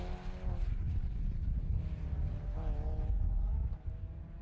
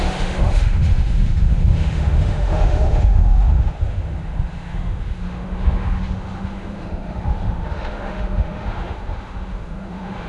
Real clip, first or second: first